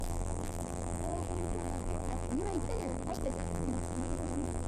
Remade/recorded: remade